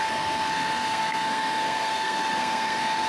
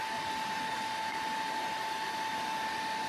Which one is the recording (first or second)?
second